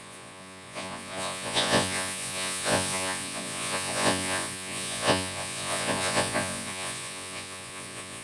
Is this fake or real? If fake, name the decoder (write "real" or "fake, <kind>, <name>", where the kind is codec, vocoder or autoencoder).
fake, vocoder, Vocos